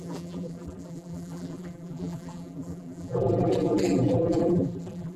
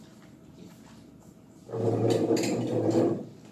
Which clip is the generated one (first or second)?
first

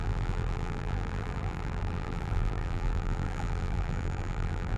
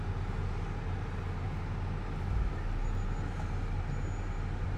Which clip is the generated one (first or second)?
first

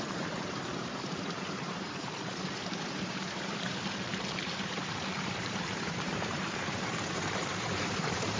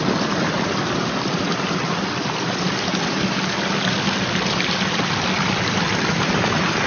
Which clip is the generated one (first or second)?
first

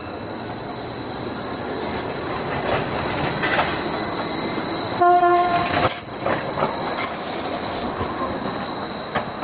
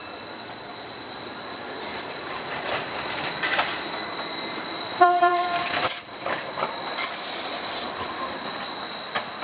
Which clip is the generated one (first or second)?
second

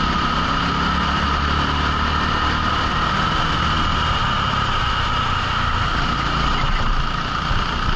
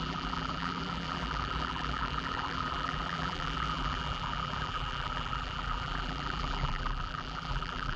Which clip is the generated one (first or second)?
second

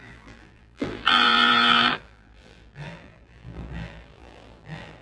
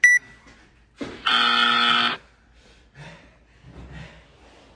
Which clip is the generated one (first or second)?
first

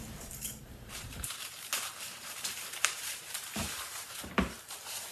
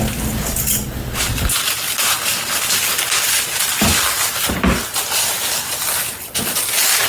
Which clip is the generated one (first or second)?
first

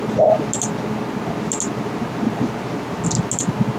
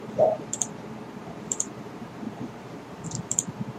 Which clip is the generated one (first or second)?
second